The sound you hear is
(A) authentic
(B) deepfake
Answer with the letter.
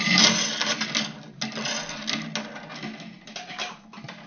A